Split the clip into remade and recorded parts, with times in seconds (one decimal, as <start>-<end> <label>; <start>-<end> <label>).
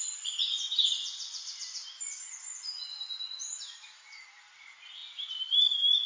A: 0.0-0.5 remade; 0.5-4.2 recorded; 4.2-6.1 remade